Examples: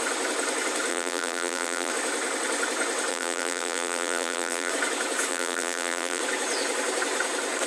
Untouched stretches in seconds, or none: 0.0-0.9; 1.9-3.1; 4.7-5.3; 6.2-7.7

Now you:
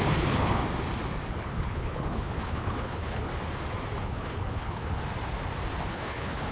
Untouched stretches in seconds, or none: 0.6-1.3; 3.3-4.0; 5.0-5.9

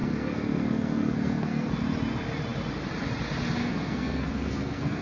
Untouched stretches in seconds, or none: 1.7-3.6

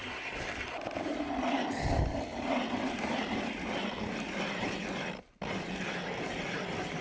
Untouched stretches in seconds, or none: 0.0-7.0

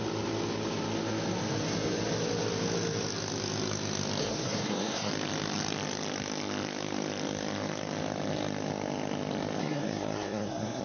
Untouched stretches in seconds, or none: 0.0-4.2; 5.1-9.6

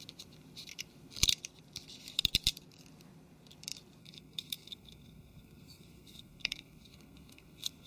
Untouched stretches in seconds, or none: 0.0-4.0

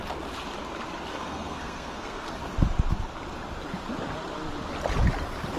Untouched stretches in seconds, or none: 0.0-1.1; 2.4-5.6

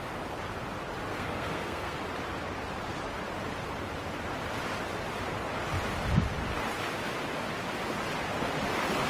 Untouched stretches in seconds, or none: 0.0-1.1; 2.0-9.1